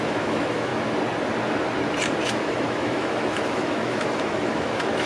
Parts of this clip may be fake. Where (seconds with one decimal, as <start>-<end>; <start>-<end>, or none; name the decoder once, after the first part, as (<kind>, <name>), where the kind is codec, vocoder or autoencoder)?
0.0-0.7 (autoencoder, DAC-VAE); 2.2-5.1